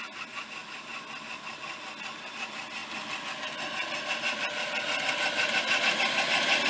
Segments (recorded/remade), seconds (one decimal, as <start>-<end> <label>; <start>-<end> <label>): 0.0-6.7 recorded

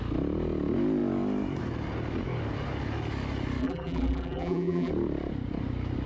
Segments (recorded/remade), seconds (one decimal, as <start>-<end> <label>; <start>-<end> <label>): 0.0-3.6 recorded; 3.6-4.9 remade; 4.9-6.1 recorded

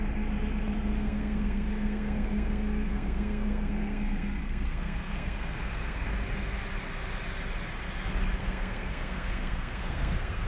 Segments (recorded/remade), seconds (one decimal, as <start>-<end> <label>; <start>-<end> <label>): 0.0-0.9 recorded; 0.9-6.1 remade; 6.1-8.4 recorded; 8.4-10.5 remade

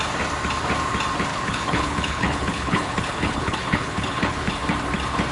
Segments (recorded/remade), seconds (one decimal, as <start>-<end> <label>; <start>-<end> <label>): 0.0-1.3 recorded; 1.3-4.5 remade; 4.5-5.3 recorded

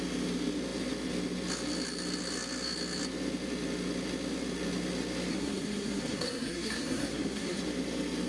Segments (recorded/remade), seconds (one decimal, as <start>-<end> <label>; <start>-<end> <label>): 0.0-5.3 recorded; 5.3-7.6 remade; 7.6-8.3 recorded

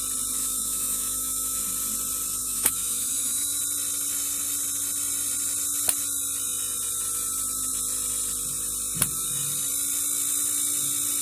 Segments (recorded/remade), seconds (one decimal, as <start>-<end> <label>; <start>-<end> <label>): 0.0-0.4 recorded; 0.4-1.6 remade; 1.6-2.4 recorded; 2.4-3.6 remade; 3.6-11.2 recorded

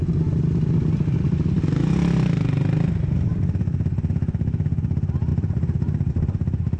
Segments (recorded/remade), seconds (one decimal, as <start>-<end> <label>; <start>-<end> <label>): 0.0-5.3 recorded; 5.3-6.1 remade; 6.1-6.8 recorded

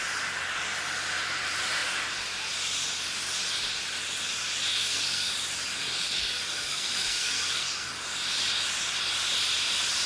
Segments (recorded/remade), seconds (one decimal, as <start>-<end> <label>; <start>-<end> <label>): 0.0-4.7 recorded; 4.7-5.3 remade; 5.3-5.8 recorded; 5.8-7.9 remade; 7.9-10.1 recorded